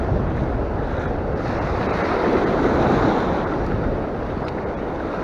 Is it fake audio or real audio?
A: real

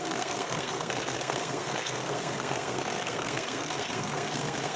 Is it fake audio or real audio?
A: fake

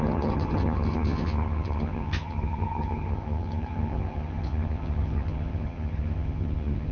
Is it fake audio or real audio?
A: fake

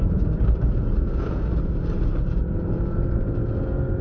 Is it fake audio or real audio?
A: real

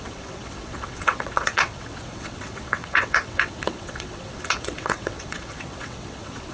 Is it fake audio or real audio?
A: fake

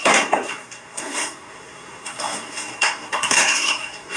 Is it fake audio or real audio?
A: fake